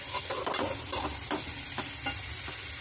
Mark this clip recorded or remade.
recorded